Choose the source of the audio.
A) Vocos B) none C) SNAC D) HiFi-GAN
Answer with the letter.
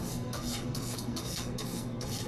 C